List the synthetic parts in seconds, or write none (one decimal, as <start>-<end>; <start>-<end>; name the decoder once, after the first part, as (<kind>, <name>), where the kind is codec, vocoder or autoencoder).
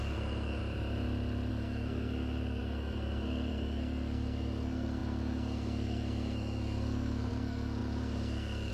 0.0-0.6 (codec, SNAC); 1.5-8.7